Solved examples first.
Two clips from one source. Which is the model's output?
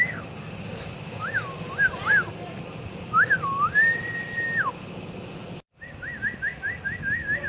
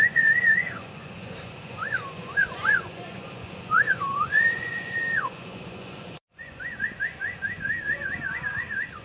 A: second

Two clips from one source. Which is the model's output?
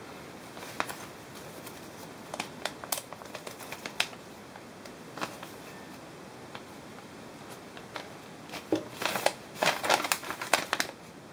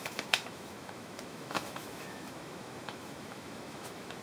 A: second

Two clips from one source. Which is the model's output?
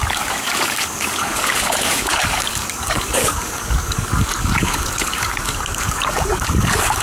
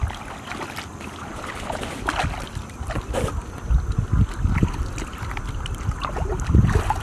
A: first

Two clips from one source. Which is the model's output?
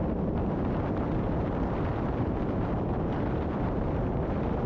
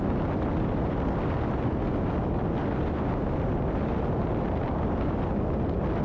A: first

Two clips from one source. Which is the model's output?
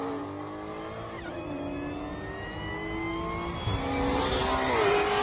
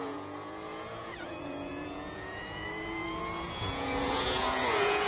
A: second